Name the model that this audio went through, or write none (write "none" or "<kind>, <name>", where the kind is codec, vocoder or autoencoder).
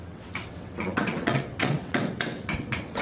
vocoder, WaveNeXt